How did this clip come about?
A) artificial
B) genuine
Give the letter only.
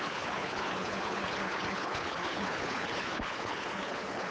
A